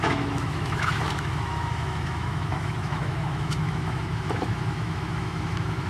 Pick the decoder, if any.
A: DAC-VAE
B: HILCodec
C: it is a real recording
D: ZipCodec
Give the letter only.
A